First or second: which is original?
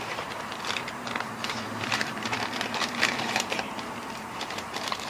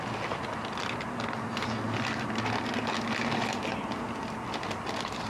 second